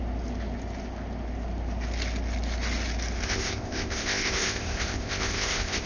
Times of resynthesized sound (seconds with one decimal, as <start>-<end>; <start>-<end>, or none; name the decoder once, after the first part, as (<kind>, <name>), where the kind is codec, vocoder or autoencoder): 3.2-5.9 (codec, ZipCodec)